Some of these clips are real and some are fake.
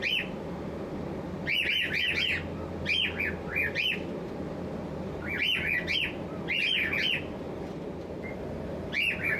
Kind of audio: real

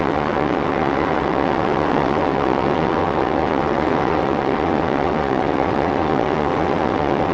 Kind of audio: fake